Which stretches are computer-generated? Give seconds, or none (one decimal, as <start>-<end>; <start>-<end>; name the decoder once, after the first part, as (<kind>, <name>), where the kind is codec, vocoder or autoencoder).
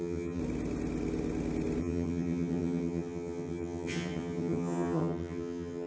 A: 0.0-0.4 (vocoder, HiFi-GAN); 1.8-5.9